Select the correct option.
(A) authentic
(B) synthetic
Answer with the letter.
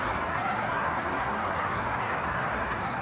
B